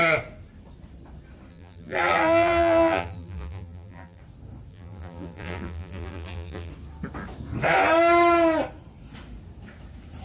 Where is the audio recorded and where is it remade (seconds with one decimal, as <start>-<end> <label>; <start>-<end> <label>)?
0.0-1.5 recorded; 1.5-4.2 remade; 4.2-4.7 recorded; 4.7-6.7 remade; 6.7-10.2 recorded